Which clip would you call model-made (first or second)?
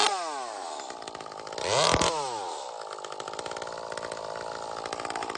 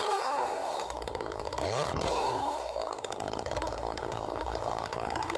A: second